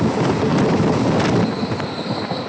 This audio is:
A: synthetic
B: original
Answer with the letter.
B